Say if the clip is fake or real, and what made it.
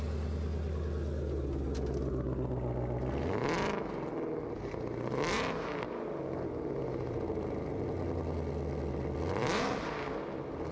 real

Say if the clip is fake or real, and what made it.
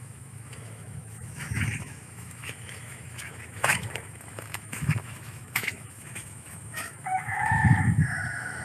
fake, autoencoder, DAC-VAE